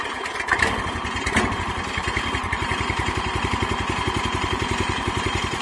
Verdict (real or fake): fake